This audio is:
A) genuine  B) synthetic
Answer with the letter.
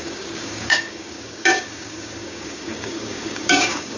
B